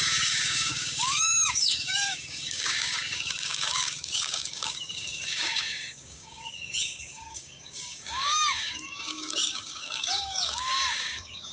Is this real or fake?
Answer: fake